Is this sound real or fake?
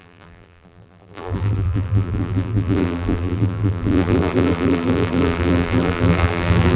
fake